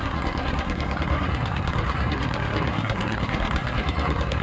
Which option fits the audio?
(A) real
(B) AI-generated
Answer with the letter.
B